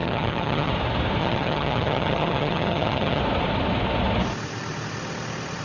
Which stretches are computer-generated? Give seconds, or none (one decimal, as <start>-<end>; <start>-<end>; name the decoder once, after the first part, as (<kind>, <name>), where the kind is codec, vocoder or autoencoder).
0.0-0.7 (vocoder, HiFi-GAN); 1.2-3.2